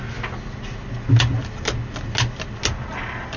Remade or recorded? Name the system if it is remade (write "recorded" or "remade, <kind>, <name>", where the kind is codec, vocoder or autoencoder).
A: recorded